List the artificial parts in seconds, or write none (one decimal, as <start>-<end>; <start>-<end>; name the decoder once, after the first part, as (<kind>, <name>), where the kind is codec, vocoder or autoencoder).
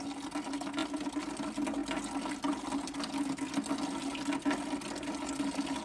none